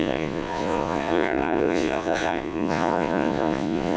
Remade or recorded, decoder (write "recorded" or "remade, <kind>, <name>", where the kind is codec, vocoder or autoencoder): remade, vocoder, Vocos